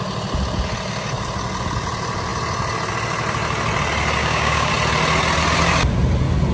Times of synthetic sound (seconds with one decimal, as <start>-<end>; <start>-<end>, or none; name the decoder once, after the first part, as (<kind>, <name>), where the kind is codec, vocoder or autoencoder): 4.2-4.7 (codec, DAC)